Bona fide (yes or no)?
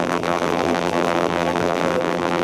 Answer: no